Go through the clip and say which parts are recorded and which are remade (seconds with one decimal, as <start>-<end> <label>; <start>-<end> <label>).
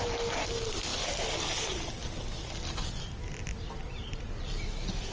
0.0-5.1 recorded